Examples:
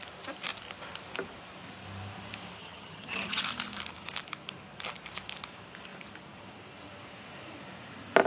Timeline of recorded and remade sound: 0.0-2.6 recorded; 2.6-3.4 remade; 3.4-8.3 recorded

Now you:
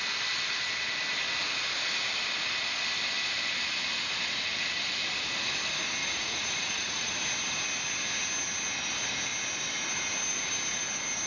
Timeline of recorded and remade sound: 0.0-6.0 recorded; 6.0-7.1 remade; 7.1-11.3 recorded

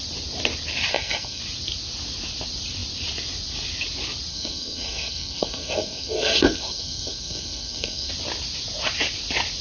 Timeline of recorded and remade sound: 0.0-0.9 recorded; 0.9-1.4 remade; 1.4-4.3 recorded; 4.3-8.1 remade; 8.1-9.6 recorded

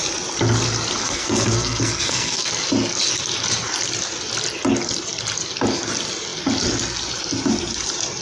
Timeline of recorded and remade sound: 0.0-1.0 recorded; 1.0-2.5 remade; 2.5-8.2 recorded

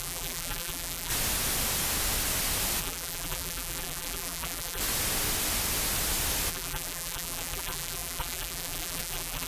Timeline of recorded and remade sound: 0.0-1.1 remade; 1.1-2.8 recorded; 2.8-4.8 remade; 4.8-6.5 recorded; 6.5-9.5 remade

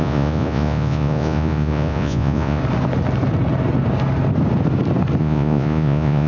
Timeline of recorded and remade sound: 0.0-2.6 remade; 2.6-5.2 recorded; 5.2-6.3 remade

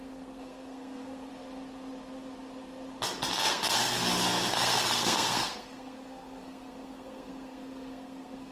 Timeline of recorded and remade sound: 0.0-1.3 remade; 1.3-3.5 recorded; 3.5-4.0 remade; 4.0-4.5 recorded; 4.5-8.5 remade